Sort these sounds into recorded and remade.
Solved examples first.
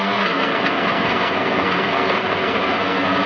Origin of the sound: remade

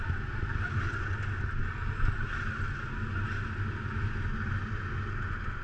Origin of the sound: recorded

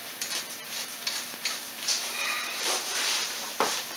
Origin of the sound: remade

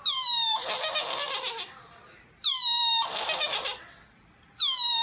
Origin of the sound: remade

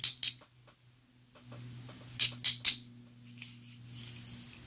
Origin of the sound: recorded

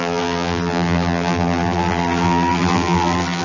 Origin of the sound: remade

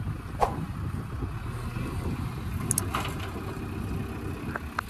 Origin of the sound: recorded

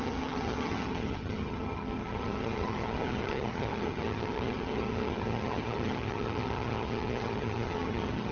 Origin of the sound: remade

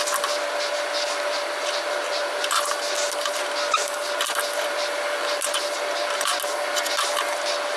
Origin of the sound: recorded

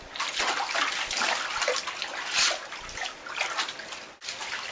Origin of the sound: recorded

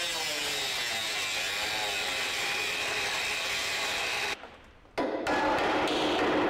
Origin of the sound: recorded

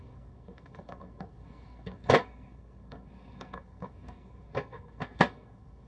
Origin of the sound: remade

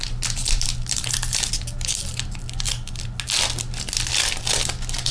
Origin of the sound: recorded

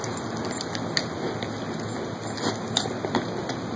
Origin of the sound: recorded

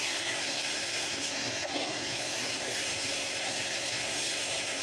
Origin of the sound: remade